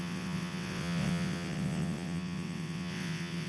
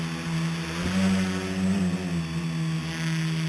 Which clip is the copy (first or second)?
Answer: first